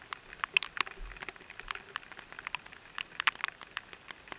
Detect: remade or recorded recorded